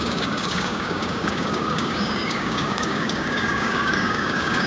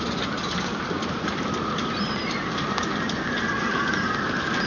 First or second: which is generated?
first